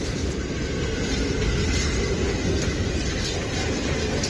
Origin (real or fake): real